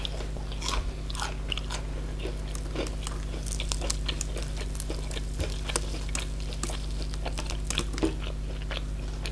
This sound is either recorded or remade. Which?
recorded